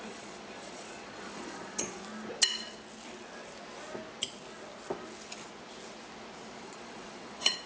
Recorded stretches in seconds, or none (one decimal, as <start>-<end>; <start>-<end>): 2.0-6.6